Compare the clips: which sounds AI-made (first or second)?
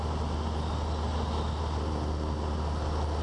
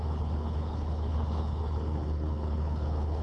second